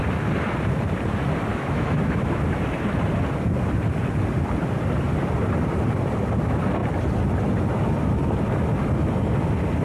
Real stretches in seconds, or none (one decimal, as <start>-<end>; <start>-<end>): 0.0-1.5; 2.4-9.8